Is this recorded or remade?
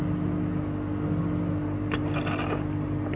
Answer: recorded